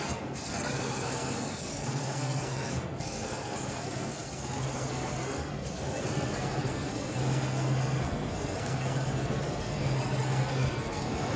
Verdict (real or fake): fake